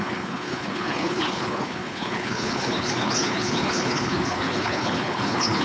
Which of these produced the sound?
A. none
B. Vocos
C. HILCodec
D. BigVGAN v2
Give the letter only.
C